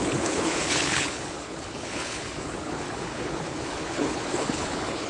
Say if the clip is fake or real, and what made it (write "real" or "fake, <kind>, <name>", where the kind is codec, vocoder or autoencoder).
fake, codec, HILCodec